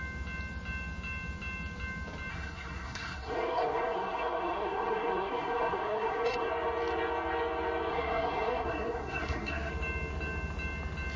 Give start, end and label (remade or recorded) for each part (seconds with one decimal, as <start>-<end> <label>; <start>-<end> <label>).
0.0-2.3 recorded; 2.3-6.5 remade; 6.5-7.9 recorded; 7.9-9.7 remade; 9.7-11.2 recorded